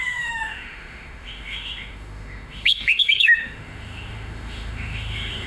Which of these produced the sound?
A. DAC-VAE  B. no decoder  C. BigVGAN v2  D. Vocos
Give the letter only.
A